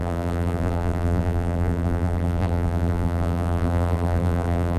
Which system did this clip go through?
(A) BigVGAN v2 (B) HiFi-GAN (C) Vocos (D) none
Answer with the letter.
A